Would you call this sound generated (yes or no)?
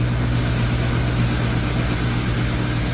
no